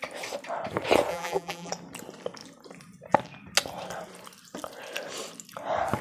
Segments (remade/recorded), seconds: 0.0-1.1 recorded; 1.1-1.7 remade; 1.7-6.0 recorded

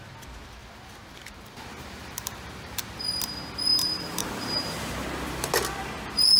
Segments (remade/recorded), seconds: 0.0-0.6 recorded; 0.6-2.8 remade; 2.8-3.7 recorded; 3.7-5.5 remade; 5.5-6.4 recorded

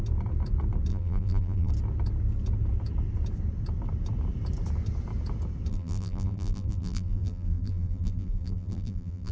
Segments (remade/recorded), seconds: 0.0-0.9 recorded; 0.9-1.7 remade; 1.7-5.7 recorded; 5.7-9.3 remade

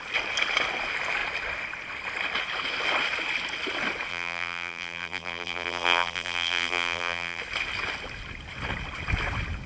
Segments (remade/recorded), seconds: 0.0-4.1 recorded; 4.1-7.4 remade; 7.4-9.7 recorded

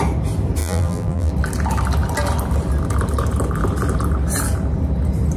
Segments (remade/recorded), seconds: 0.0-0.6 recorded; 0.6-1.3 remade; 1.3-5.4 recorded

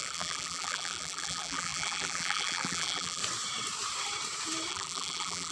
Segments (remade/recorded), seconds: 0.0-3.2 remade; 3.2-4.7 recorded; 4.7-5.5 remade